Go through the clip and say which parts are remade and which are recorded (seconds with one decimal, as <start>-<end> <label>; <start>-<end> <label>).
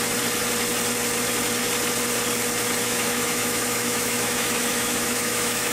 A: 0.0-2.8 recorded; 2.8-5.7 remade